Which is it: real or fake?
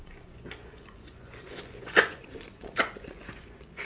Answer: fake